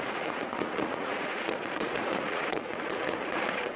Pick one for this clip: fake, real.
fake